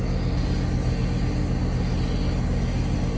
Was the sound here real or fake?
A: real